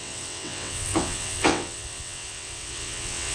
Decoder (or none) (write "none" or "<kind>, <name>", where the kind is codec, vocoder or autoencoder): vocoder, WaveNeXt